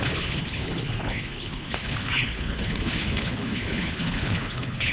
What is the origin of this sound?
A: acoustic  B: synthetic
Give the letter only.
B